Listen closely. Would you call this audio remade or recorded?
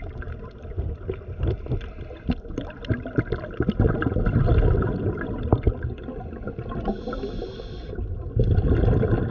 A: recorded